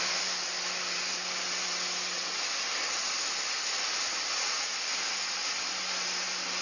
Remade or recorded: recorded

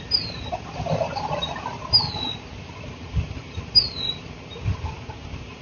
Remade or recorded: recorded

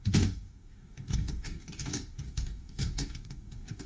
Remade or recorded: remade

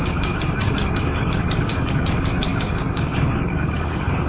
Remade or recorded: remade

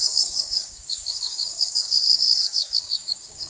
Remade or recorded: remade